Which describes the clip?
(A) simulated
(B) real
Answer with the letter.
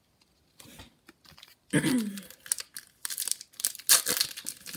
B